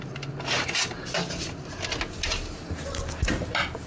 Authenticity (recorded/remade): recorded